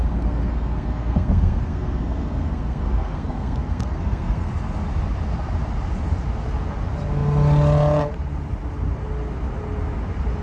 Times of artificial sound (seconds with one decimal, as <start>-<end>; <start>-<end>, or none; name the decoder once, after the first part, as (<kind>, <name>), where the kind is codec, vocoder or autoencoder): 0.0-4.5 (codec, SNAC)